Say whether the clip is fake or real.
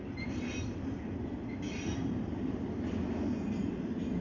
real